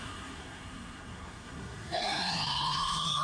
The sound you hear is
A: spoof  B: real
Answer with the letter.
A